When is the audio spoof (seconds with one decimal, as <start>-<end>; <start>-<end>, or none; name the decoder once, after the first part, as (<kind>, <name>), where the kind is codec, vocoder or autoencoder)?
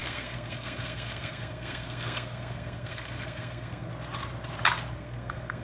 0.0-3.9 (codec, SNAC); 4.9-5.6